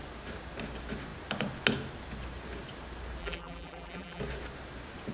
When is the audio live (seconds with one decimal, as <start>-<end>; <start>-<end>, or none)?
0.0-3.2; 4.2-5.1